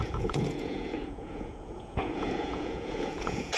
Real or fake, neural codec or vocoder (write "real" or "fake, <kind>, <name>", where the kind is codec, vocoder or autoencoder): fake, vocoder, Vocos